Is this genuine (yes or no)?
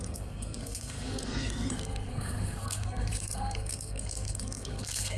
no